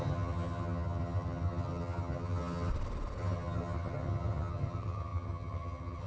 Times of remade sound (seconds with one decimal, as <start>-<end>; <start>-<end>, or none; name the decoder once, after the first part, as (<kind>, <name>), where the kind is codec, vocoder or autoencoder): 0.0-2.7 (vocoder, HiFi-GAN); 3.2-6.1